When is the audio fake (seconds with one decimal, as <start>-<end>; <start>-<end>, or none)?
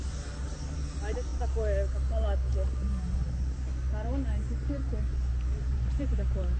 0.0-1.3; 5.3-6.6